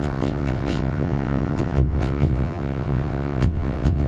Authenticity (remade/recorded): remade